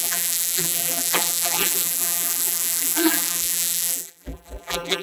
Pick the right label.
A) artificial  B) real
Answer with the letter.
A